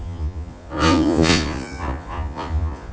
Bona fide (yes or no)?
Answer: no